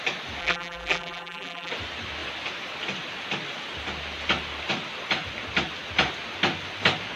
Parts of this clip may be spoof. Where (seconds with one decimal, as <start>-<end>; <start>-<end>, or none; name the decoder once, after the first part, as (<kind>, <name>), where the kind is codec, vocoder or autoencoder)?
0.4-1.7 (vocoder, BigVGAN v2)